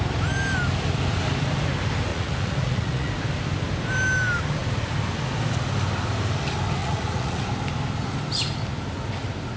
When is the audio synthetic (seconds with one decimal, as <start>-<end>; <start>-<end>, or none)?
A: 2.1-3.1; 6.8-7.4